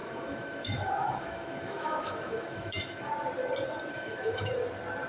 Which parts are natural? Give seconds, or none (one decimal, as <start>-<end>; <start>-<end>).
3.1-3.9; 4.5-5.1